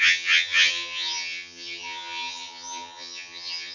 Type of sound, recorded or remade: remade